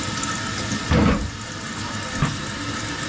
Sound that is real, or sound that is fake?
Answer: real